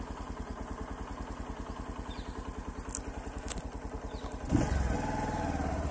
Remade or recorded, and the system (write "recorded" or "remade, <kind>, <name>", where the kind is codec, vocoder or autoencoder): recorded